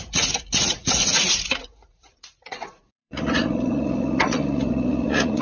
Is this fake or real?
fake